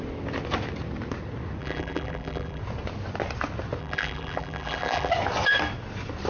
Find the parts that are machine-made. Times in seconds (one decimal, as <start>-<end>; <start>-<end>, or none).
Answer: 1.6-2.6; 3.8-5.1